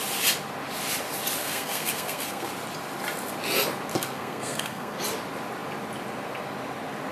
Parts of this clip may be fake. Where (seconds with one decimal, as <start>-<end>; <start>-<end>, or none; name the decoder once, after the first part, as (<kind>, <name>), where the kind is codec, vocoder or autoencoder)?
1.4-2.5 (codec, SNAC); 3.9-5.0